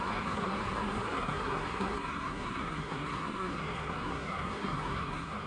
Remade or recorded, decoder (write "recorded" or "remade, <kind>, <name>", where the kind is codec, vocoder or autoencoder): remade, codec, SNAC